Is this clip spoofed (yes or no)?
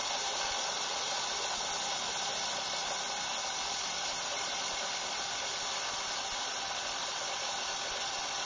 no